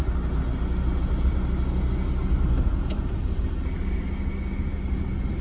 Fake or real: real